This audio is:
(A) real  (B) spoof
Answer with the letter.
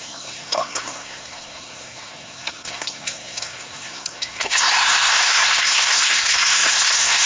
B